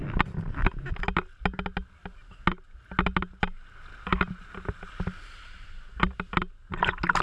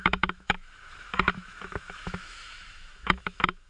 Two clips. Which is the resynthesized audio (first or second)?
second